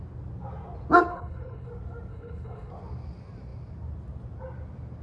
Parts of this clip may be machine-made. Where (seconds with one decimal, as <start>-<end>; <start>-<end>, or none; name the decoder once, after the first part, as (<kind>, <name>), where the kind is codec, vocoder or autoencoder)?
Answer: 1.1-1.7 (codec, HILCodec); 2.1-2.7